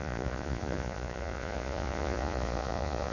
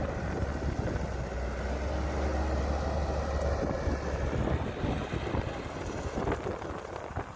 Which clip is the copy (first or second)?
first